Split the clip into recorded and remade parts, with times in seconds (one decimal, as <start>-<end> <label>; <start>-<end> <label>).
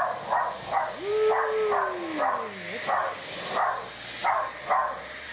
0.0-5.3 recorded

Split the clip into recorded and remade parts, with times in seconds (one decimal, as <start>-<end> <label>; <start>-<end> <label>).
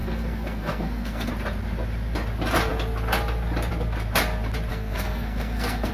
0.0-1.3 remade; 1.3-4.7 recorded; 4.7-5.9 remade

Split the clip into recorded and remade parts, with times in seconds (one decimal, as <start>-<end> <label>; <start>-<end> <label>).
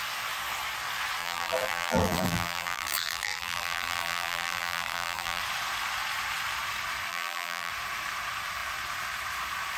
0.0-1.2 recorded; 1.2-5.4 remade; 5.4-7.1 recorded; 7.1-7.7 remade; 7.7-9.8 recorded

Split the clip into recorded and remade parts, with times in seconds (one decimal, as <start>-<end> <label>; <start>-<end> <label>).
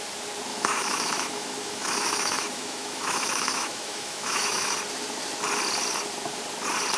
0.0-0.5 recorded; 0.5-4.7 remade; 4.7-7.0 recorded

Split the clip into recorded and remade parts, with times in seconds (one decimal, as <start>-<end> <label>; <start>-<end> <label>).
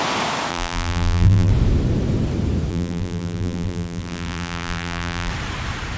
0.0-0.5 recorded; 0.5-1.5 remade; 1.5-2.7 recorded; 2.7-5.3 remade; 5.3-6.0 recorded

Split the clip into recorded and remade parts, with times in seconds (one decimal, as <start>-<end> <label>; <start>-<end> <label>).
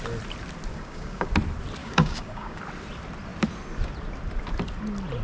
0.0-0.7 recorded; 0.7-1.3 remade; 1.3-1.8 recorded; 1.8-2.6 remade; 2.6-5.2 recorded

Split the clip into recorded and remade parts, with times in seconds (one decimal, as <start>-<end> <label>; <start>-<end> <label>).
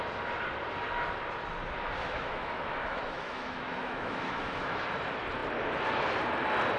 0.0-2.0 recorded; 2.0-4.8 remade; 4.8-6.8 recorded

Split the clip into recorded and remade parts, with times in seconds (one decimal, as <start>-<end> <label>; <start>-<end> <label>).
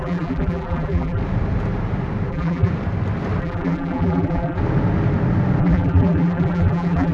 0.0-1.2 remade; 1.2-2.3 recorded; 2.3-2.7 remade; 2.7-3.4 recorded; 3.4-4.6 remade; 4.6-5.6 recorded; 5.6-7.1 remade